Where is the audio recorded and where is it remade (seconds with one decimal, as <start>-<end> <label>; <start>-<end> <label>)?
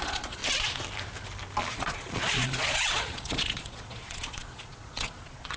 0.0-0.4 remade; 0.4-1.7 recorded; 1.7-5.6 remade